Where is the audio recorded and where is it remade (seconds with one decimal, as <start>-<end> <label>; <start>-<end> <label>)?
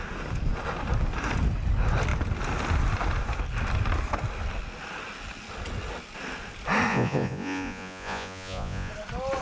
0.0-6.9 recorded; 6.9-8.9 remade; 8.9-9.4 recorded